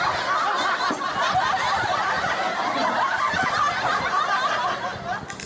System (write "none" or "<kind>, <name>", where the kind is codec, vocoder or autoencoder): none